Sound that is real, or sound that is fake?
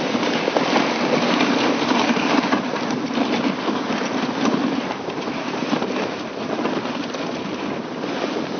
real